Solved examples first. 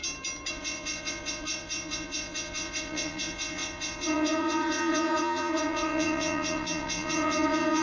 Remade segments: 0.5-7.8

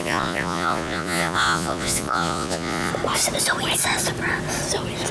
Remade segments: 0.0-2.9

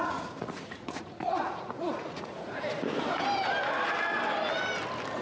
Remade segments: 0.0-2.5

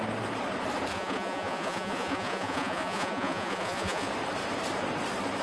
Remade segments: 0.9-4.1

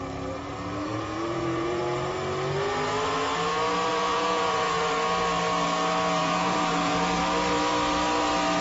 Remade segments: 0.9-1.8; 3.9-4.9; 6.2-7.2

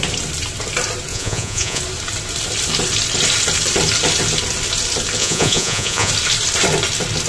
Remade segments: 1.1-1.8; 5.2-6.1

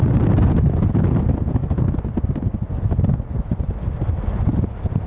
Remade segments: none

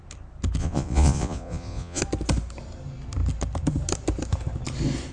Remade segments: 0.6-2.0